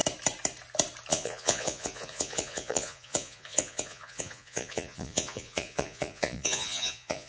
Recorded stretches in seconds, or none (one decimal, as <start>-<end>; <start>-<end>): 0.0-1.1